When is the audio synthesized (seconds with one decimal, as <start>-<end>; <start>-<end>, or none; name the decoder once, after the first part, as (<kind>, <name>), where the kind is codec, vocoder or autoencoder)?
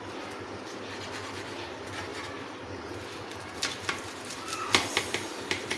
none